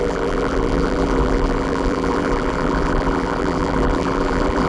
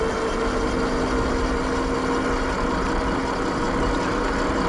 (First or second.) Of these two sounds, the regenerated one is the first